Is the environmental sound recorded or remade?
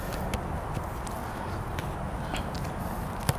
recorded